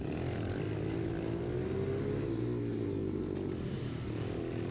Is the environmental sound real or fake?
real